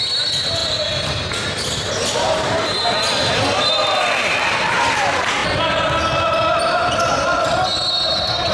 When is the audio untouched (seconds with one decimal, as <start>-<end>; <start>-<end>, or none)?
0.0-8.5